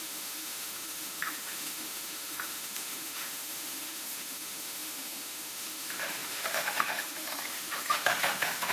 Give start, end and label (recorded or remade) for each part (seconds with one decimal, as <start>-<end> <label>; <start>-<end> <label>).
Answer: 0.0-8.7 remade